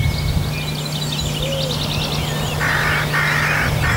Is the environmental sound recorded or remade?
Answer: recorded